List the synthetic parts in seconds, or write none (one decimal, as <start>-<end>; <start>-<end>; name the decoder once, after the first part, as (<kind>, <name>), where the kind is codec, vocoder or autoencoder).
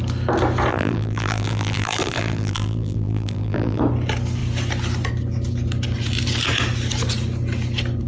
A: 0.7-3.8 (vocoder, BigVGAN v2)